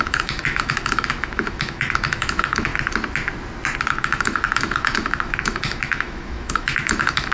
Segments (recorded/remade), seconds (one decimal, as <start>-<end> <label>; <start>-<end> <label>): 0.0-2.7 remade; 2.7-3.9 recorded; 3.9-7.3 remade